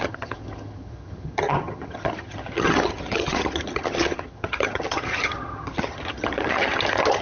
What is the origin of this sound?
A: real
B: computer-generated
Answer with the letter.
B